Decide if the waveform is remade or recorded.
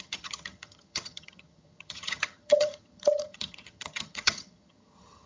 remade